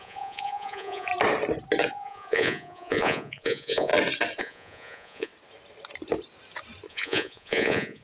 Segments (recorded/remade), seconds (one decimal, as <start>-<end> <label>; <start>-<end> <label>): 0.0-1.1 remade; 1.1-1.9 recorded; 1.9-3.9 remade; 3.9-4.4 recorded; 4.4-5.3 remade; 5.3-6.9 recorded; 6.9-8.0 remade